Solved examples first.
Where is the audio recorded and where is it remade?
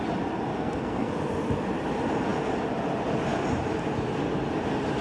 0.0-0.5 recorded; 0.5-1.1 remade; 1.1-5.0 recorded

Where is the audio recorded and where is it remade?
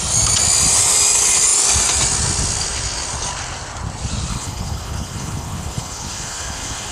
0.0-4.3 recorded; 4.3-6.9 remade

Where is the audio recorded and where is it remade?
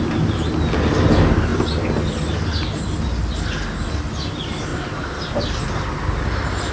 0.0-4.7 recorded; 4.7-6.7 remade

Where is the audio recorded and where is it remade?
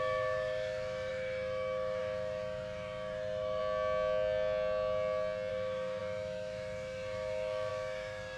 0.0-3.6 remade; 3.6-5.5 recorded; 5.5-8.4 remade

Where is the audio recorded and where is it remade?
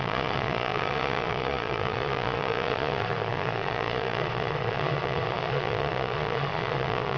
0.0-7.2 remade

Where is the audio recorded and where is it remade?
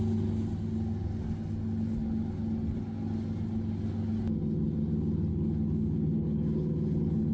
0.0-5.3 recorded; 5.3-7.3 remade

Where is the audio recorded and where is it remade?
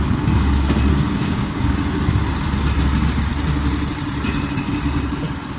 0.0-0.9 recorded; 0.9-1.7 remade; 1.7-5.6 recorded